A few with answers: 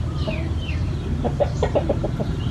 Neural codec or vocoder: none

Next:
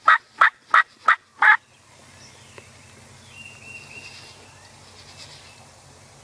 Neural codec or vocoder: none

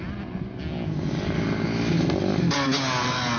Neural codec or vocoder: none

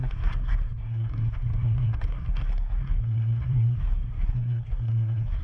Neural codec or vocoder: codec, SNAC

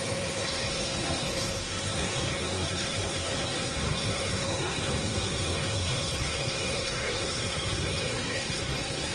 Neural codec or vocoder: codec, SNAC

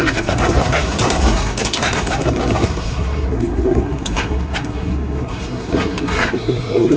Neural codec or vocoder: codec, SNAC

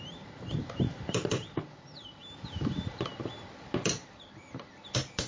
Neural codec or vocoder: none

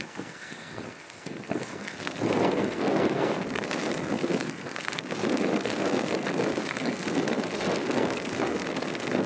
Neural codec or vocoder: codec, SNAC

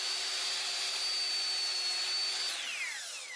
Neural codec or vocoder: none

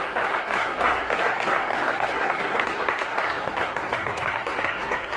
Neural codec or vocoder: codec, SNAC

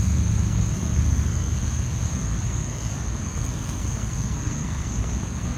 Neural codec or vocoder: codec, SNAC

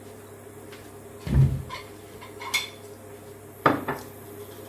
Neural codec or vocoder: none